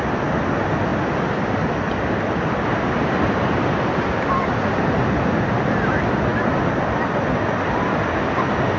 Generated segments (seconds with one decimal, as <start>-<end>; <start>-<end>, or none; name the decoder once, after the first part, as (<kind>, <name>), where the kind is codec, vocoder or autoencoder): none